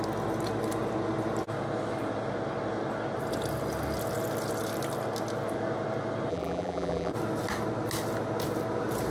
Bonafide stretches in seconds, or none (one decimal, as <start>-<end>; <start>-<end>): 0.0-6.3; 7.1-9.1